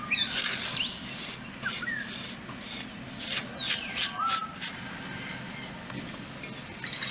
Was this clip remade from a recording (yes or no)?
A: no